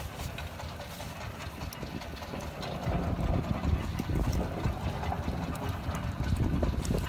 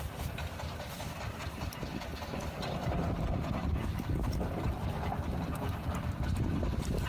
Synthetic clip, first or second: second